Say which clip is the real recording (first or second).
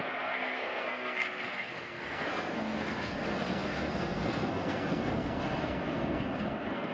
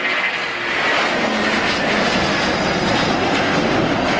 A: second